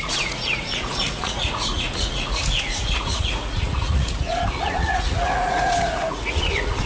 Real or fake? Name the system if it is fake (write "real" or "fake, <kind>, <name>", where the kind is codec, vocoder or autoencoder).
fake, vocoder, Vocos